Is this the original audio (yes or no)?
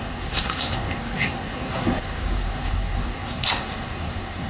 no